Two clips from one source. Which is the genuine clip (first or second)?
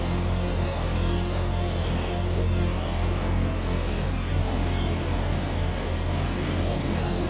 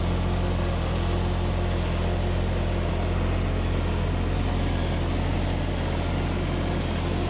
second